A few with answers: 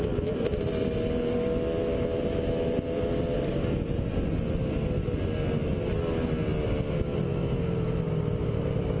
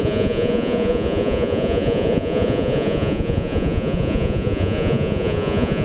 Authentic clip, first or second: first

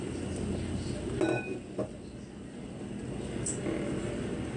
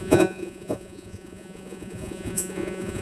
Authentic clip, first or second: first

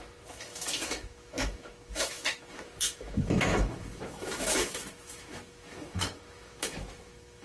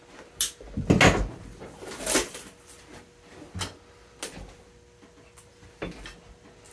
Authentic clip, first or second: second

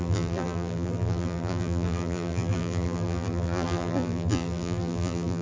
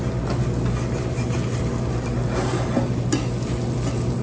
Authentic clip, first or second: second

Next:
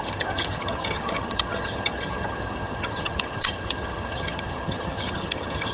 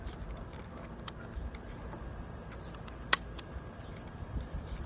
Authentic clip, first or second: second